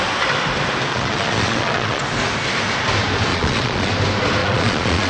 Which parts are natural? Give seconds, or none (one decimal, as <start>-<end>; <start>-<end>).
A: 0.0-0.9; 2.0-3.3; 3.9-4.4